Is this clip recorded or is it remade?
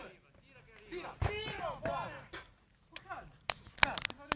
recorded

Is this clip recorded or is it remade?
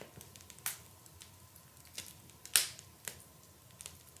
recorded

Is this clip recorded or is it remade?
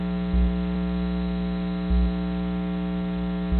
recorded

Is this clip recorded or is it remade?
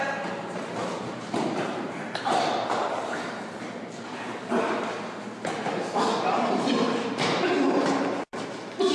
remade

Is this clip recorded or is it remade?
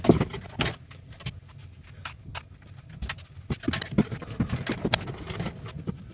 recorded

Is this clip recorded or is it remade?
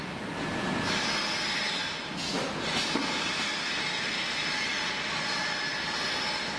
recorded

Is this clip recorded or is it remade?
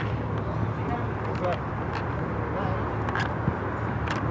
recorded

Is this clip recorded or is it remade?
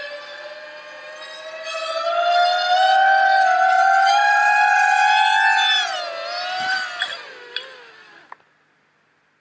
recorded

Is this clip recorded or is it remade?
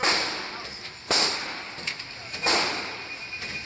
recorded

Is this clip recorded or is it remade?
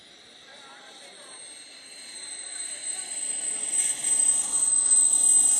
remade